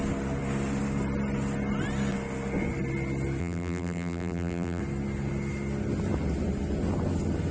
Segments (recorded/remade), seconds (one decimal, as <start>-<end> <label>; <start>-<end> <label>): 0.0-3.4 recorded; 3.4-4.8 remade; 4.8-7.5 recorded